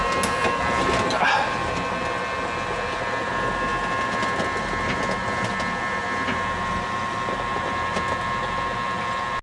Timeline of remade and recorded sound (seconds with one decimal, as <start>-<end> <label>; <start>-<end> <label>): 0.0-9.4 recorded